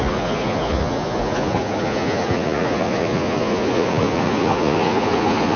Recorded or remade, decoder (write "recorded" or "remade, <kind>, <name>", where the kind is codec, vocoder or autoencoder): remade, vocoder, Vocos